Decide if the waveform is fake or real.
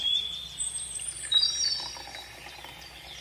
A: fake